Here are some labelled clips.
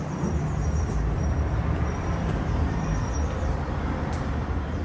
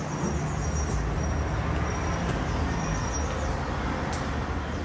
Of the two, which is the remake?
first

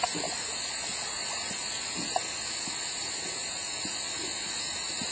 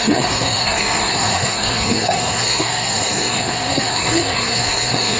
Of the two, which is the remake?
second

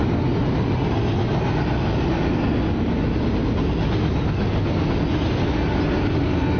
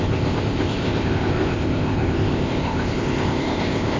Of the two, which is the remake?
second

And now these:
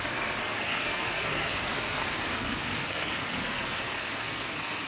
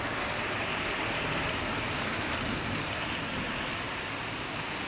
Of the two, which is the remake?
first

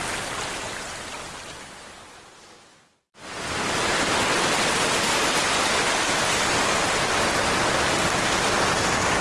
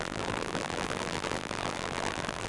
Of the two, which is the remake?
second